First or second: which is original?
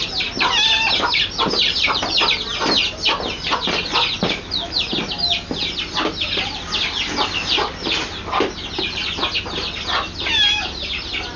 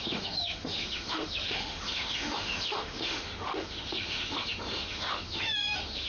first